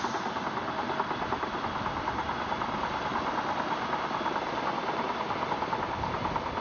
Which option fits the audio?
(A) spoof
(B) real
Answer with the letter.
B